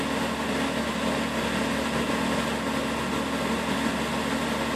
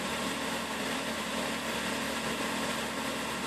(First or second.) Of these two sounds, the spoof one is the second